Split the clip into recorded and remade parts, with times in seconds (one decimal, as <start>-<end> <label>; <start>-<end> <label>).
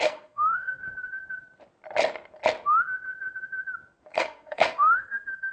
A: 0.0-0.8 remade; 0.8-4.1 recorded; 4.1-5.5 remade